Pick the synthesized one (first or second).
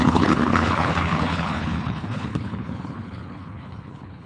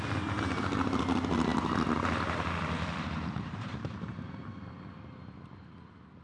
first